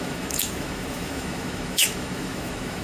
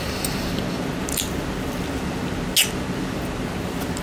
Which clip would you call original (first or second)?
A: second